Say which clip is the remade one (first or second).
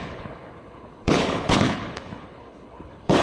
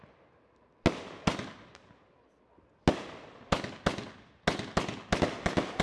first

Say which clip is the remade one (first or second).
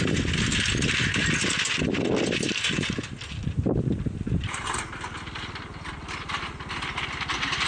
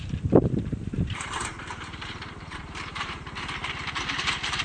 second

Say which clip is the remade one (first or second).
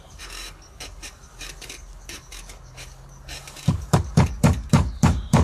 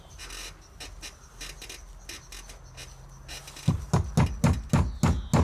first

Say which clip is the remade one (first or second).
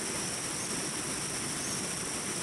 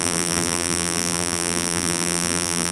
second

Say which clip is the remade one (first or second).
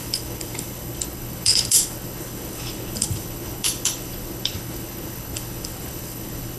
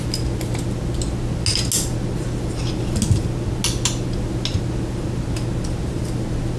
first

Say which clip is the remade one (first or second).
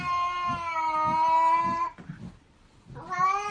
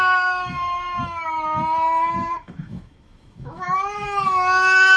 second